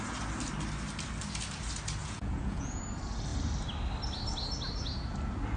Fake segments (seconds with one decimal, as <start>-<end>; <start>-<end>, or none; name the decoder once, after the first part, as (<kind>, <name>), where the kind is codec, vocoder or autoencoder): 2.0-2.8 (vocoder, Vocos)